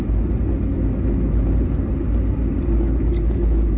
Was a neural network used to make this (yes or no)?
no